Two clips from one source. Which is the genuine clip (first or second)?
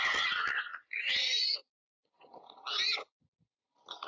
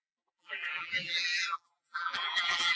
first